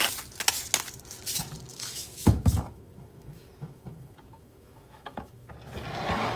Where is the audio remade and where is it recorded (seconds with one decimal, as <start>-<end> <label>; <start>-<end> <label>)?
0.0-1.7 recorded; 1.7-5.5 remade; 5.5-6.4 recorded